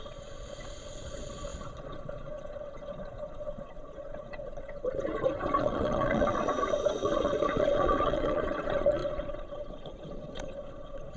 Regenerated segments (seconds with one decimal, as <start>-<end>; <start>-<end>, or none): 0.0-11.2